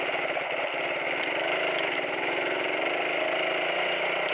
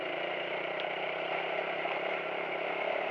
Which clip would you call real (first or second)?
first